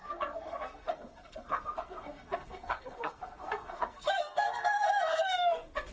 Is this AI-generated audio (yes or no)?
yes